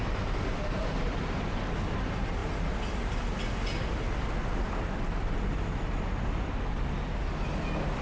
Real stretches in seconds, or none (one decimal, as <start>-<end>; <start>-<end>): 0.0-8.0

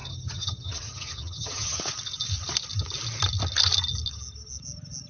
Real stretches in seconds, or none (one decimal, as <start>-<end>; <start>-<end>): 1.8-5.1

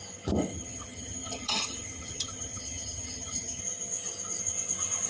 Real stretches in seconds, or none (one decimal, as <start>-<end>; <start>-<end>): 0.0-0.5; 3.6-5.1

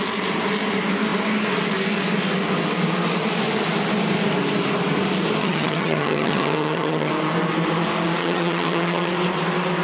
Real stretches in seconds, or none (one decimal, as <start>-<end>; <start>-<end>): 0.0-5.4; 7.1-8.2; 9.1-9.8

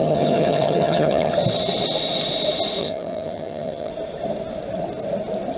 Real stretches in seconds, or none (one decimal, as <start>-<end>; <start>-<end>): 1.3-2.8; 3.9-5.6